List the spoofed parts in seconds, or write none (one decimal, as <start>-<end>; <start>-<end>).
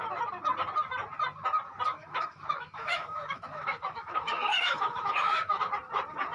1.9-5.7